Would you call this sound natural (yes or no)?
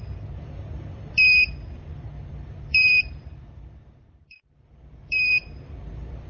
no